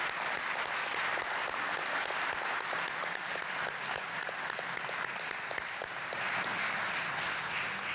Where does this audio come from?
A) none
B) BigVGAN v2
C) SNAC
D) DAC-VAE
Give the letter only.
A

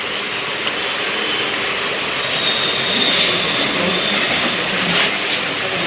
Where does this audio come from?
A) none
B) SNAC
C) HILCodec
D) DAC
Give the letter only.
A